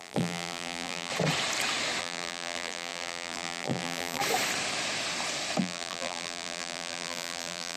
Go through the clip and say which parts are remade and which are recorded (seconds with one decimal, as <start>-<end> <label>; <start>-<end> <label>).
0.0-1.1 remade; 1.1-2.0 recorded; 2.0-4.2 remade; 4.2-5.6 recorded; 5.6-7.8 remade